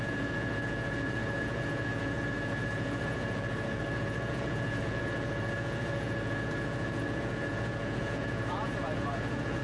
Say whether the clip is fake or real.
fake